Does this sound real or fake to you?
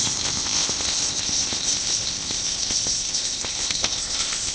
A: fake